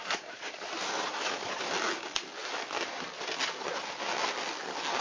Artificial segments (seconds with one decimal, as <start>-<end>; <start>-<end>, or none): 0.0-1.7